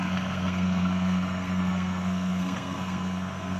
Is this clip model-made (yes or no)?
yes